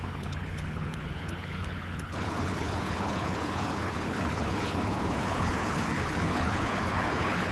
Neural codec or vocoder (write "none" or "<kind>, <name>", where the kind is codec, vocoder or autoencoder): codec, HILCodec